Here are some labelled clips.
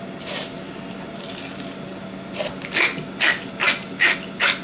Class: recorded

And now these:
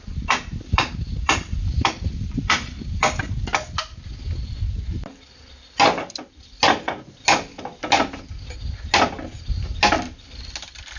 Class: recorded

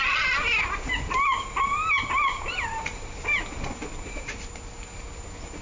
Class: recorded